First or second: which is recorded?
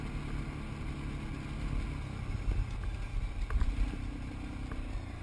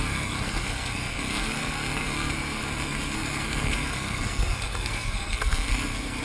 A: first